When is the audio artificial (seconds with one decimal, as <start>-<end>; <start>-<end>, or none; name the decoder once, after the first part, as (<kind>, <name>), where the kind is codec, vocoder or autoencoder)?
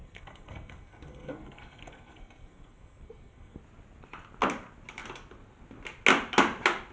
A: 0.0-3.6 (codec, SNAC)